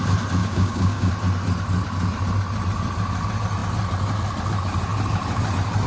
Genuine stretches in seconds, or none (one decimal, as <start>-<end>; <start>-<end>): 0.0-0.4; 1.1-5.9